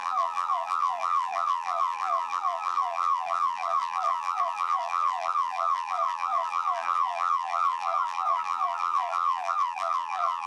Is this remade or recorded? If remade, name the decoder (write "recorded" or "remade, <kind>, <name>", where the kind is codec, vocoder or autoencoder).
remade, vocoder, BigVGAN v2